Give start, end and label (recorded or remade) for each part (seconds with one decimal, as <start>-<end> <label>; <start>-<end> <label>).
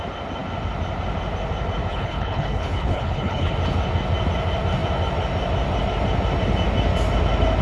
0.0-1.9 recorded; 1.9-3.5 remade; 3.5-7.6 recorded